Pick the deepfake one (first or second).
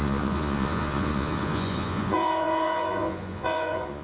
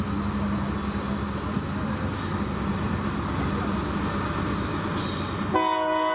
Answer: first